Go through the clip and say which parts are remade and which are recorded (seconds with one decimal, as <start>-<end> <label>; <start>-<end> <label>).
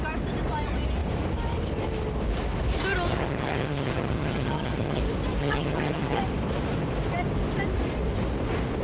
0.0-3.1 recorded; 3.1-5.0 remade; 5.0-5.4 recorded; 5.4-6.2 remade; 6.2-8.8 recorded